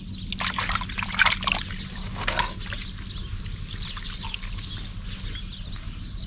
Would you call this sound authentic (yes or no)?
yes